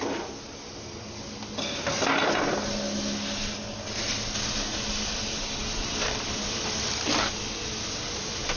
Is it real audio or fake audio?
real